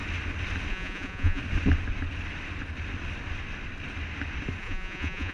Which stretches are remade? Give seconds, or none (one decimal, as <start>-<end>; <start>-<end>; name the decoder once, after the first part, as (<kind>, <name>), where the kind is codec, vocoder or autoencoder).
0.7-1.4 (vocoder, Vocos); 4.6-5.3